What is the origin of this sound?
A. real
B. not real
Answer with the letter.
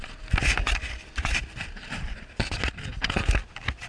A